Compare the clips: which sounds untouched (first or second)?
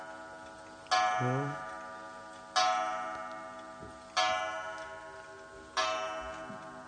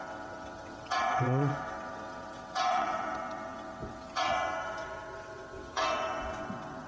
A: first